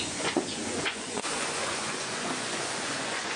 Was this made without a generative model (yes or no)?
no